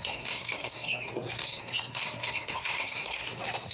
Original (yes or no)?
no